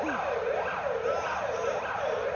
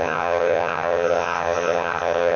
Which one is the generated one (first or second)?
second